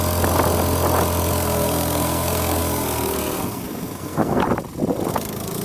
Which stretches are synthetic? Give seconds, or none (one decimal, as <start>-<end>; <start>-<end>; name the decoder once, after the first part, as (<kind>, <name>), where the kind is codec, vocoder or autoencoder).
1.3-4.4 (codec, SNAC); 5.1-5.6